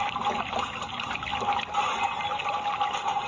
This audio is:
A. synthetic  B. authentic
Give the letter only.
B